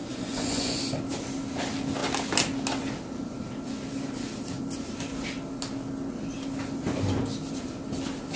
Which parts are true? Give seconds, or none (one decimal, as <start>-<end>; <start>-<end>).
0.8-8.4

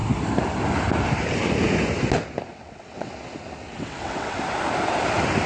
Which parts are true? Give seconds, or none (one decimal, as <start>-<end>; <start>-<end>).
0.0-2.5; 3.1-3.7; 4.4-5.5

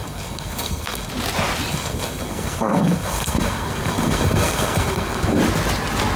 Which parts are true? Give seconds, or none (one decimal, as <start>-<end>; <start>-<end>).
1.1-1.7; 5.4-6.2

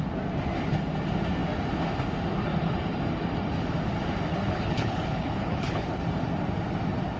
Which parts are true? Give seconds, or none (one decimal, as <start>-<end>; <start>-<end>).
0.0-4.3; 6.0-7.2

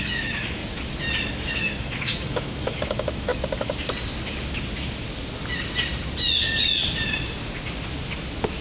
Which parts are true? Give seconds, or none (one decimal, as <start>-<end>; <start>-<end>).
0.6-1.3; 3.3-8.6

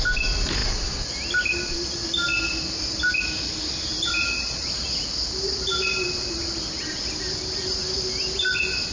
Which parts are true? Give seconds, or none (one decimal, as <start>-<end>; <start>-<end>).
0.0-8.9

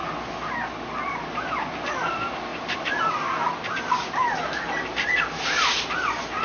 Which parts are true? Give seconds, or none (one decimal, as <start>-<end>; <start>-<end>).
0.0-6.4